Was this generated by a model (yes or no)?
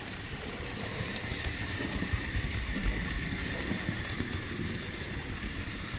yes